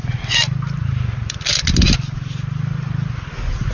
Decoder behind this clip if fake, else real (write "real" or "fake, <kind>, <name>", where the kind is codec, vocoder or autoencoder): real